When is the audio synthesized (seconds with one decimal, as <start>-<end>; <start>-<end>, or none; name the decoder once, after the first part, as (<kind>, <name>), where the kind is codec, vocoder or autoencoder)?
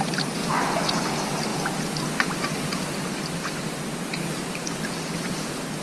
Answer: 0.4-1.1 (vocoder, Vocos)